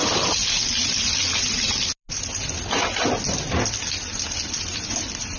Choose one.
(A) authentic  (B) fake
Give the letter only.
A